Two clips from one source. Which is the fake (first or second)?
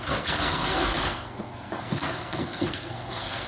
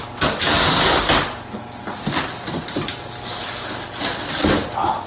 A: first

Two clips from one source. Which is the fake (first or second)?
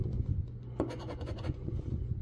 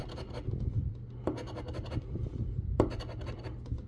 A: first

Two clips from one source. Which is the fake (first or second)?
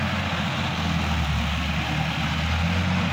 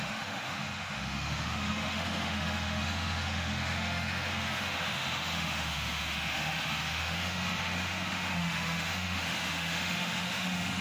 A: second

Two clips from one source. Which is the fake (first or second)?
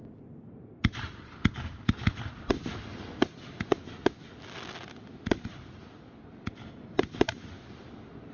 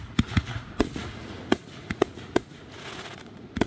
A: second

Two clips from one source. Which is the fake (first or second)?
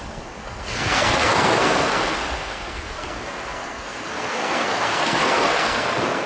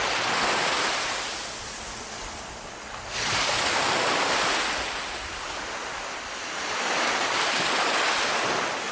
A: first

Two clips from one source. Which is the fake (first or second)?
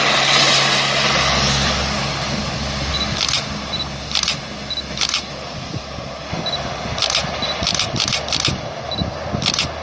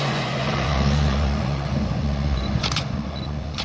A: second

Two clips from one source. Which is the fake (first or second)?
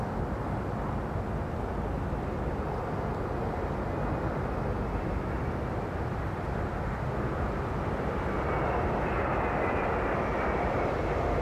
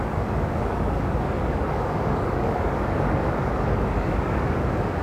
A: second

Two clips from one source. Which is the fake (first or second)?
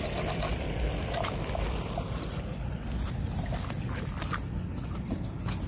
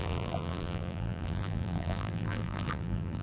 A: second